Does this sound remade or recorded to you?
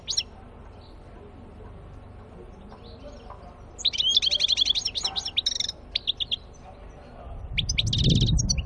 recorded